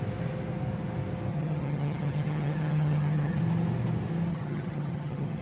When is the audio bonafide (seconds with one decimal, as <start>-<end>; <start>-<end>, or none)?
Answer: 0.0-1.3; 3.4-4.3